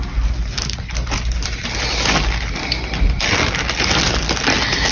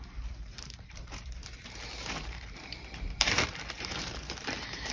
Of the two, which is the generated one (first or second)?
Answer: second